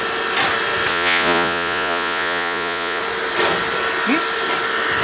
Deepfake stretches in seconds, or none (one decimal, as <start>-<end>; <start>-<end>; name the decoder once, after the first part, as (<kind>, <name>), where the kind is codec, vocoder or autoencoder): 0.9-3.0 (vocoder, Vocos)